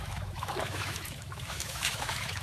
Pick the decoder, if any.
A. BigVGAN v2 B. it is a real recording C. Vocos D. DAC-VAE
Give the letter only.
D